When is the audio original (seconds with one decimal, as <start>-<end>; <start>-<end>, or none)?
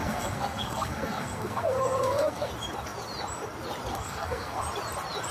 2.5-3.9; 4.6-5.3